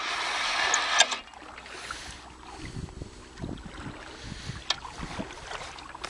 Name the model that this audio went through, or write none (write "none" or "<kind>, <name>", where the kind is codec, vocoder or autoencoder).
none